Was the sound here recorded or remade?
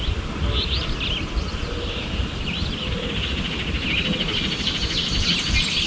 recorded